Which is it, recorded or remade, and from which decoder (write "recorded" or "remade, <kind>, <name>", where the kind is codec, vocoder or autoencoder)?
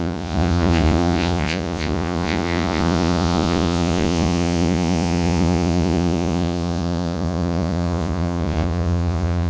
remade, vocoder, Vocos